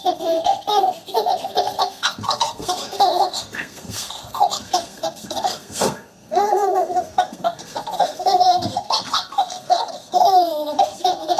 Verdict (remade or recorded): remade